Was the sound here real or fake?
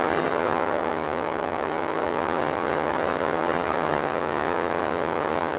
fake